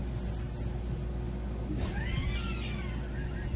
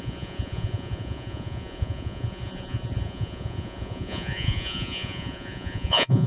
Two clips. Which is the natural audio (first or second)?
first